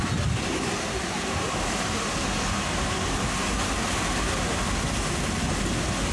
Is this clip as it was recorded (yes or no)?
yes